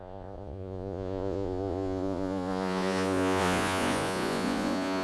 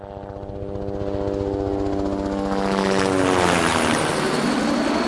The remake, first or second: first